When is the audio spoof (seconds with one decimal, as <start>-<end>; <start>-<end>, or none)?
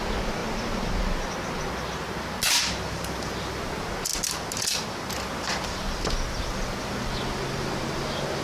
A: none